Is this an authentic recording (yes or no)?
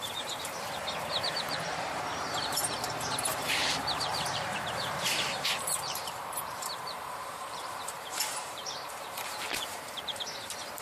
no